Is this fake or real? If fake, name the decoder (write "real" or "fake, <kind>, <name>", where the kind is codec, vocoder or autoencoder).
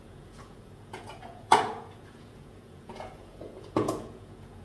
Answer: fake, vocoder, Vocos